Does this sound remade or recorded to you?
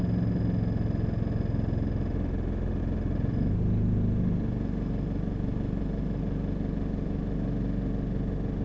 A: recorded